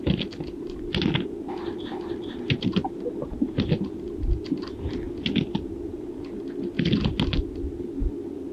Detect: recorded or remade recorded